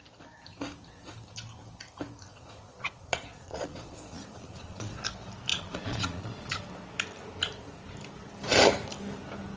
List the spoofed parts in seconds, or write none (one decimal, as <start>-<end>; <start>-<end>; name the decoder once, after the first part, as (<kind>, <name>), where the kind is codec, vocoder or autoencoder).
2.3-4.9 (vocoder, Vocos); 5.5-6.6